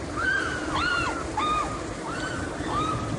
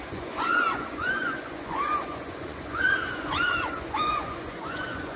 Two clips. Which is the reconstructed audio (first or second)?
second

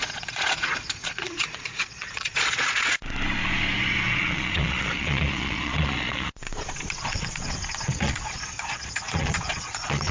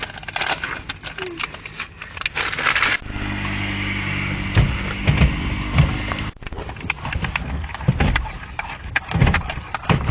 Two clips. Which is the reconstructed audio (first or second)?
first